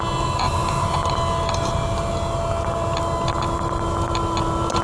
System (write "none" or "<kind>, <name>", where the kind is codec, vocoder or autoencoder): none